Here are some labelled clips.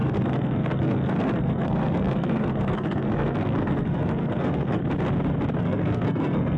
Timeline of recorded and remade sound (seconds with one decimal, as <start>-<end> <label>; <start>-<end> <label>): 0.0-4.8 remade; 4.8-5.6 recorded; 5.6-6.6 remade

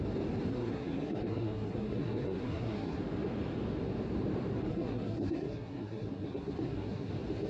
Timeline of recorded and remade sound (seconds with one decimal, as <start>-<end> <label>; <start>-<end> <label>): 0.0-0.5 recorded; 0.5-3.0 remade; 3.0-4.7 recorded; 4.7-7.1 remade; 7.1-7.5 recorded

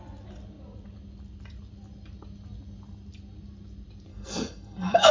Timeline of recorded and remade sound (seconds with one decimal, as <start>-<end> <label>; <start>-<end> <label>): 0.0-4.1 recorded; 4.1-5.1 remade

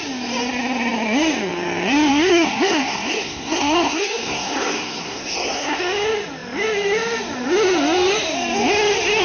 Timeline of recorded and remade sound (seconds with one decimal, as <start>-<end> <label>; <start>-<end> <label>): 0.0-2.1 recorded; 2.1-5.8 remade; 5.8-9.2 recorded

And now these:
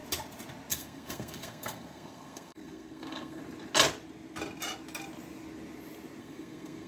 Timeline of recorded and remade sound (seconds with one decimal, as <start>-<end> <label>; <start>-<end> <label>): 0.0-0.7 recorded; 0.7-3.4 remade; 3.4-6.2 recorded; 6.2-6.9 remade

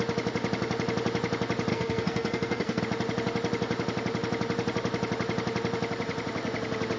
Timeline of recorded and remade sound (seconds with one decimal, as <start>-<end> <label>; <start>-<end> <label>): 0.0-1.7 recorded; 1.7-2.8 remade; 2.8-7.0 recorded